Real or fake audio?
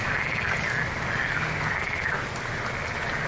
real